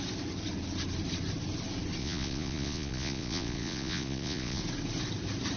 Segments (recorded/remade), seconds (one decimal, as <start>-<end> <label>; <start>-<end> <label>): 0.0-2.0 recorded; 2.0-4.6 remade; 4.6-5.6 recorded